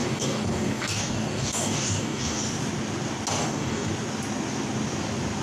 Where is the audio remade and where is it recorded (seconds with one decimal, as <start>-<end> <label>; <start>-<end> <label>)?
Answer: 0.0-2.4 remade; 2.4-3.4 recorded; 3.4-3.9 remade; 3.9-5.4 recorded